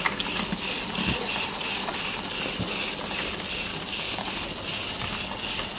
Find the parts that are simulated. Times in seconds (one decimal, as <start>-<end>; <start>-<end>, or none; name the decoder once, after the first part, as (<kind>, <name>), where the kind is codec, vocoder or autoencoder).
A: 3.7-4.3 (codec, DAC)